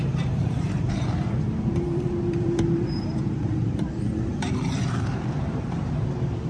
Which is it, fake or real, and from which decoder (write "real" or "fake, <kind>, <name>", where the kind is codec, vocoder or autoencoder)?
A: fake, vocoder, BigVGAN v2